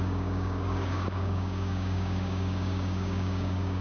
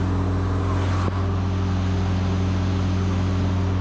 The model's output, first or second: first